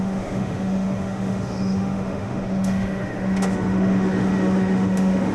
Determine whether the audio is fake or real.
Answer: fake